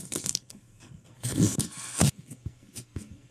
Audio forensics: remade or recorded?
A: remade